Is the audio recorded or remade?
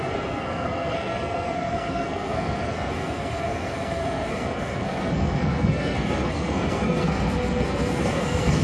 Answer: remade